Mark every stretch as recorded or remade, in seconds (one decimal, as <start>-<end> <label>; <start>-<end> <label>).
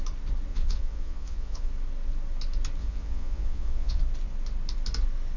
0.0-0.5 recorded; 0.5-1.7 remade; 1.7-2.8 recorded; 2.8-4.0 remade; 4.0-5.4 recorded